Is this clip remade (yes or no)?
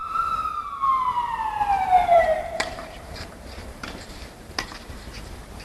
yes